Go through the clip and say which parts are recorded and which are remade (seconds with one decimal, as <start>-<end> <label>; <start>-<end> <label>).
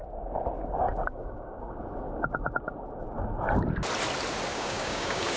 0.0-1.1 recorded; 1.1-1.8 remade; 1.8-4.5 recorded; 4.5-5.4 remade